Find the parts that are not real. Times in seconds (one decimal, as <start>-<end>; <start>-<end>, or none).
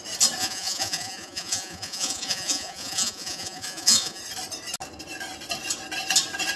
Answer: 0.4-4.2